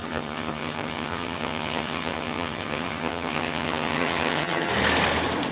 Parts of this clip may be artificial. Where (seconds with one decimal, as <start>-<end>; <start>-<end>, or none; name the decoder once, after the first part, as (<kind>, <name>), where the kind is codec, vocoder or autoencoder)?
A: 0.0-4.7 (vocoder, HiFi-GAN)